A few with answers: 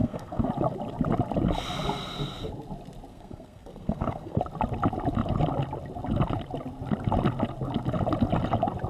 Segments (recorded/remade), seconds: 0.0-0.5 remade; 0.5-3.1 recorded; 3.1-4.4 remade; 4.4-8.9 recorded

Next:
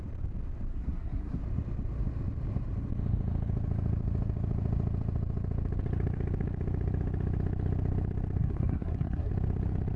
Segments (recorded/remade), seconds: 0.0-0.7 recorded; 0.7-1.4 remade; 1.4-8.4 recorded; 8.4-9.3 remade; 9.3-10.0 recorded

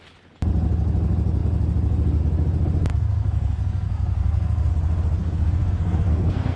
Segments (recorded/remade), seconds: 0.0-2.9 recorded; 2.9-4.7 remade; 4.7-5.2 recorded; 5.2-6.6 remade

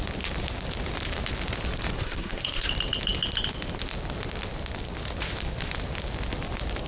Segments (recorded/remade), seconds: 0.0-2.0 recorded; 2.0-2.7 remade; 2.7-6.9 recorded

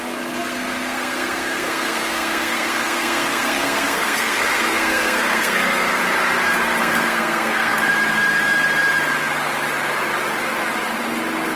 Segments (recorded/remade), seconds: 0.0-6.0 remade; 6.0-6.8 recorded; 6.8-7.9 remade; 7.9-11.6 recorded

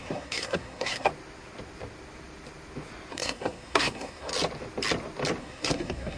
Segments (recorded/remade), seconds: 0.0-1.1 remade; 1.1-3.1 recorded; 3.1-4.3 remade; 4.3-5.4 recorded; 5.4-6.2 remade

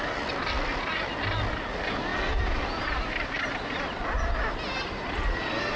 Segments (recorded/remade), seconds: 0.0-5.8 recorded

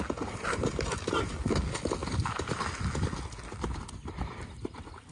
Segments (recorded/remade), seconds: 0.0-5.1 recorded